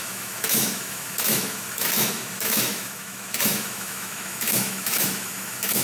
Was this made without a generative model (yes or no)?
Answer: no